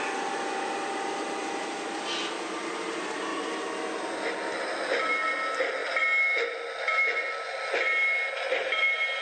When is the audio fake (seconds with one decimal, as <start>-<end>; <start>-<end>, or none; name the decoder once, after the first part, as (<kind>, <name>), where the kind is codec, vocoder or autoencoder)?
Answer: none